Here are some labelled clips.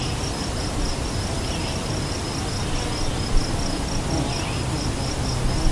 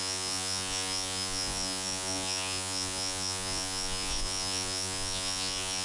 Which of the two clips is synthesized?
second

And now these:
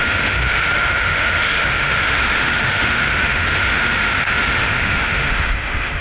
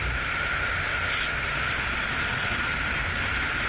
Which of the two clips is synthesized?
first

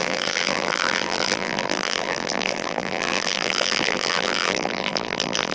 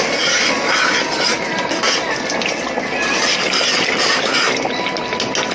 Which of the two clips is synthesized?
first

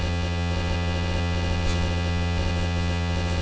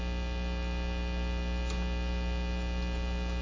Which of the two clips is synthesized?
first